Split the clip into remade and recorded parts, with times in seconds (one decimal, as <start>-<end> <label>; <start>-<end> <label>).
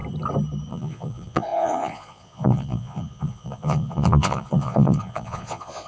0.0-0.7 recorded; 0.7-5.9 remade